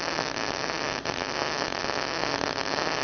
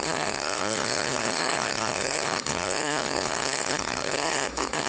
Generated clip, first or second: second